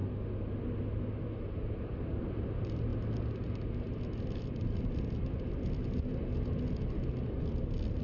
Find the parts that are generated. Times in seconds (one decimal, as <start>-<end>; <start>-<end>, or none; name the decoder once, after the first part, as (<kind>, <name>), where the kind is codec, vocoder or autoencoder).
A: none